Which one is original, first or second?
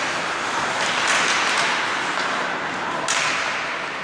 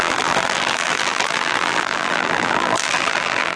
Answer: first